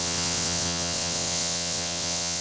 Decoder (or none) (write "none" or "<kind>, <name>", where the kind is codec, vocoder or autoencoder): vocoder, WaveNeXt